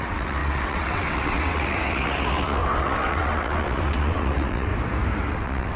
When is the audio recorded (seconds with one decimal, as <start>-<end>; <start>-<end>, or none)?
4.7-5.3